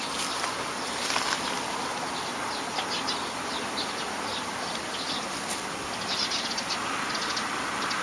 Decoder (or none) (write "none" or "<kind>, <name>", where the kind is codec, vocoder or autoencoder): none